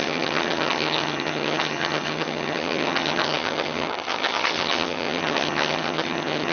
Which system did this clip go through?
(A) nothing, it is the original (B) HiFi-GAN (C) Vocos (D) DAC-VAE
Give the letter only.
B